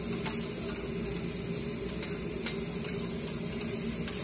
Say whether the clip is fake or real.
real